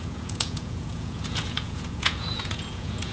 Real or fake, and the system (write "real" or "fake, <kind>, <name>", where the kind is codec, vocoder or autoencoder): fake, vocoder, Vocos